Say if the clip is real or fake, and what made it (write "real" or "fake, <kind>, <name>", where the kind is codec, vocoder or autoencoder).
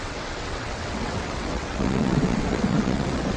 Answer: fake, vocoder, WaveNeXt